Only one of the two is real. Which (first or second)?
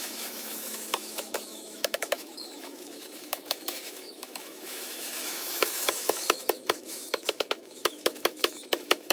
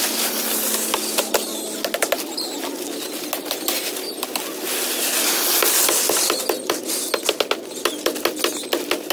second